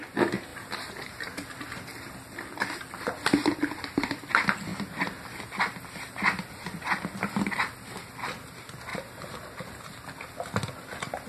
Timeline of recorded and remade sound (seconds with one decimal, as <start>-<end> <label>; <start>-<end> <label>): 0.0-0.5 recorded; 0.5-1.2 remade; 1.2-8.9 recorded; 8.9-10.0 remade; 10.0-11.3 recorded